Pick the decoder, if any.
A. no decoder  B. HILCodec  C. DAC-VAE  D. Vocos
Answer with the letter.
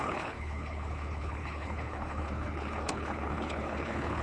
B